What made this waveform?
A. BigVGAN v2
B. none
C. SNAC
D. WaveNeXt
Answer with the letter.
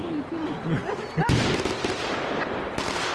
B